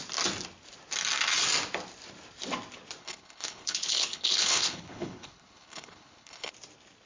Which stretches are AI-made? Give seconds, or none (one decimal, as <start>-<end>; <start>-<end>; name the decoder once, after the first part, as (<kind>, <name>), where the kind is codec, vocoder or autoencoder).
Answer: 3.0-6.5 (codec, HILCodec)